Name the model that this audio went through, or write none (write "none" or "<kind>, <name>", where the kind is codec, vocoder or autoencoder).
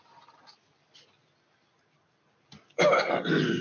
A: none